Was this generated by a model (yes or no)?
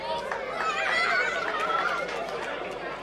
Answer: no